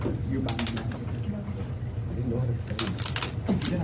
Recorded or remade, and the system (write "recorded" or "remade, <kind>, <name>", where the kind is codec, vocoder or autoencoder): recorded